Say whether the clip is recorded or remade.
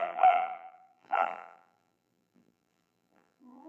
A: remade